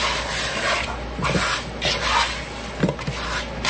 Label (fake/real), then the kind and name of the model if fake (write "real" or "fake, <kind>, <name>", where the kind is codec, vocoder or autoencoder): real